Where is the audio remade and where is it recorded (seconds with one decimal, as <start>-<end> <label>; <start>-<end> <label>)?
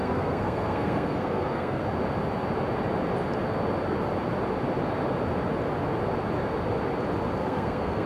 0.0-1.8 remade; 1.8-7.4 recorded; 7.4-8.1 remade